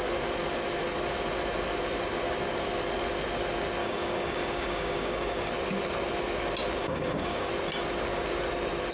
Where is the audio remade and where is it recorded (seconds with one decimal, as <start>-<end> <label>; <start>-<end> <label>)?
0.0-3.8 recorded; 3.8-5.5 remade; 5.5-6.8 recorded; 6.8-7.5 remade; 7.5-8.9 recorded